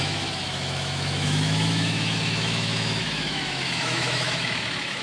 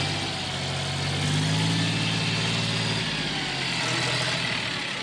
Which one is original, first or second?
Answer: second